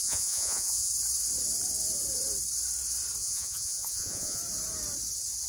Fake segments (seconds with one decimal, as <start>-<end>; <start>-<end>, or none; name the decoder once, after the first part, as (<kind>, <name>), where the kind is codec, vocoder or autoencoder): 0.0-0.9 (vocoder, Vocos); 3.2-4.4